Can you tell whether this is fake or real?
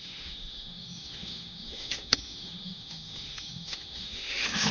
fake